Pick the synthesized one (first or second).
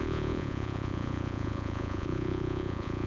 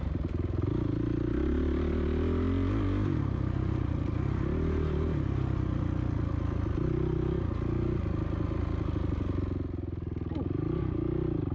first